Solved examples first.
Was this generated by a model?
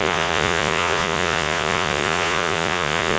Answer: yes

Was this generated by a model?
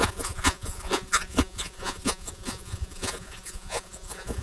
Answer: yes